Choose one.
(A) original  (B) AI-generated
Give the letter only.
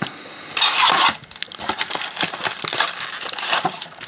A